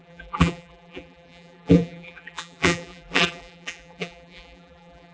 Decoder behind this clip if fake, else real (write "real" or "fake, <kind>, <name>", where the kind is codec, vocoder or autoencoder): fake, vocoder, BigVGAN v2